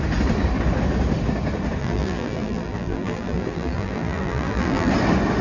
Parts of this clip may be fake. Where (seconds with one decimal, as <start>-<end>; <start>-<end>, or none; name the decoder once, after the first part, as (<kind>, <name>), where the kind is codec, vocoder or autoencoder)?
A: 1.8-4.9 (vocoder, BigVGAN v2)